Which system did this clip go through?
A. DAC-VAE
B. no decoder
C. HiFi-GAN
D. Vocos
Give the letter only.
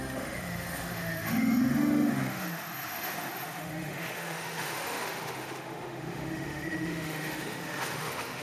A